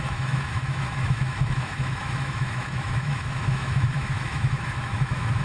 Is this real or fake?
fake